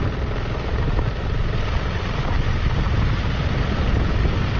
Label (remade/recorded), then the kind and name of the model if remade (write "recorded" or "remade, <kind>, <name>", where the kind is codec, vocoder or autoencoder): recorded